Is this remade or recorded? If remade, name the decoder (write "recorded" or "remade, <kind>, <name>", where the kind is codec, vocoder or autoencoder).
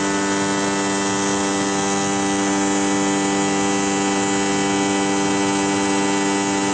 recorded